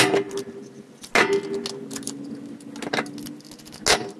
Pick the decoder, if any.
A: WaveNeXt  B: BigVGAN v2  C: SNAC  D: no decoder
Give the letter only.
D